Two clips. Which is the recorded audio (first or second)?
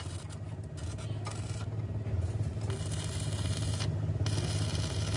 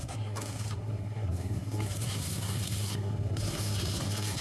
first